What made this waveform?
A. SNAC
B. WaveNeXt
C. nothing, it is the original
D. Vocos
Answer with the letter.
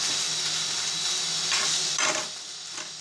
C